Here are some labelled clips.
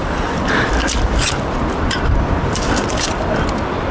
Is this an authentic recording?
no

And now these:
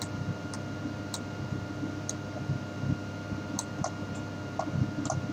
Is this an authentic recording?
yes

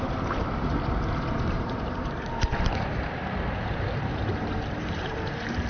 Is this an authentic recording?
no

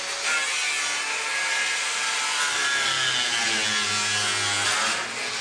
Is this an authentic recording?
yes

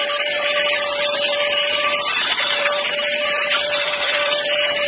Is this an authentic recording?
no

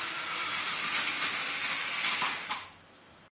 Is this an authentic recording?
yes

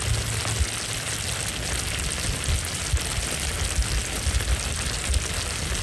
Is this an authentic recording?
yes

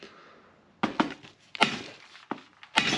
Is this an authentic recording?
yes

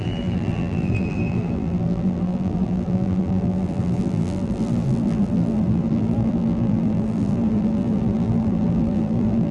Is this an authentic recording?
no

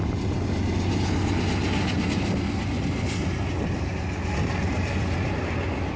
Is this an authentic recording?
yes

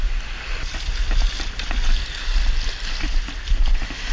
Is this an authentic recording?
yes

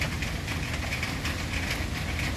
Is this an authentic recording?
yes